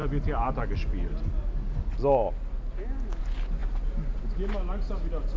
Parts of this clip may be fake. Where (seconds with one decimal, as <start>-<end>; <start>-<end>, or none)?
none